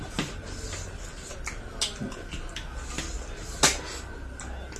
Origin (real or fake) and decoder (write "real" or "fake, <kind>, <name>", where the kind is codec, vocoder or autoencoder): real